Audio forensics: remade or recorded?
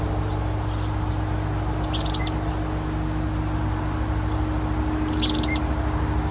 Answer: recorded